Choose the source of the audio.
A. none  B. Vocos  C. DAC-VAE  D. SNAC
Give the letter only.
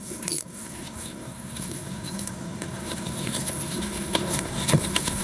D